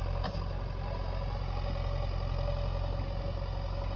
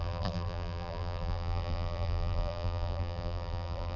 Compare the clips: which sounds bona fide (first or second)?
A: first